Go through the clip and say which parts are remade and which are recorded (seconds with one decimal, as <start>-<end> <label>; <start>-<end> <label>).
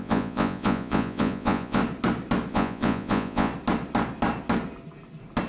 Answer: 0.0-1.8 remade; 1.8-2.5 recorded; 2.5-3.5 remade; 3.5-5.5 recorded